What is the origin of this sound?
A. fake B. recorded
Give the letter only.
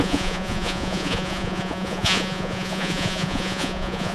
A